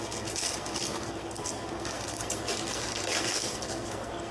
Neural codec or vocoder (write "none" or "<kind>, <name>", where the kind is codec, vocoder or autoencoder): codec, SNAC